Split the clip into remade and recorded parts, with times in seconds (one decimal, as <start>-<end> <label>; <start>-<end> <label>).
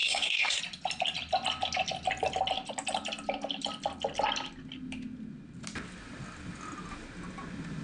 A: 0.0-0.6 remade; 0.6-7.8 recorded